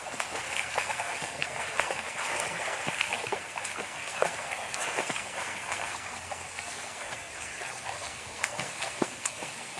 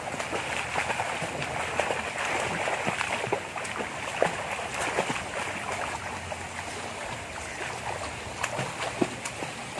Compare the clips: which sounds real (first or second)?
second